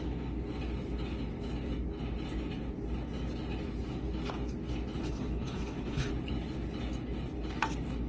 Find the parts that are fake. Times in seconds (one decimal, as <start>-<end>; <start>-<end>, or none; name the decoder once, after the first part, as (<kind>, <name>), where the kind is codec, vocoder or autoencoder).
5.0-6.1 (codec, HILCodec)